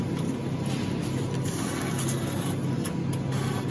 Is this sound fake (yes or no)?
no